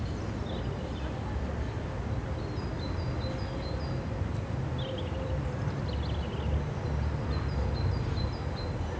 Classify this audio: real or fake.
real